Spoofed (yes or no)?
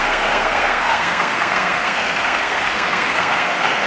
yes